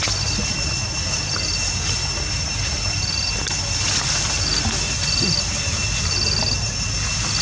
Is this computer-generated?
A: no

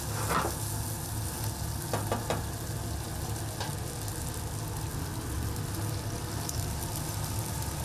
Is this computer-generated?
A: no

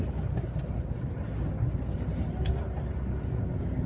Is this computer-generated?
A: no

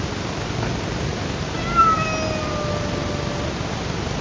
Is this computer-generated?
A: no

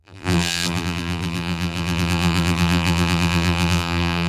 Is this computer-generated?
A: yes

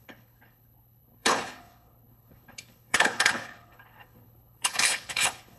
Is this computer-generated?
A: yes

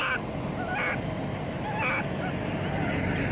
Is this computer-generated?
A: no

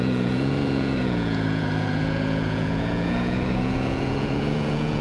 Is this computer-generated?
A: yes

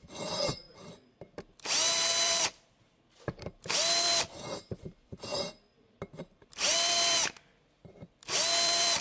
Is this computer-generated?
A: yes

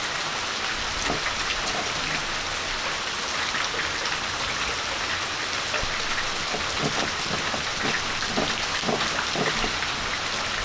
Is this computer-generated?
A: no